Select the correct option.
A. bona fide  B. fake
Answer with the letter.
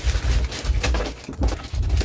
A